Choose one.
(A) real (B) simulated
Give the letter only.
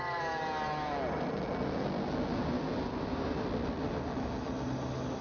A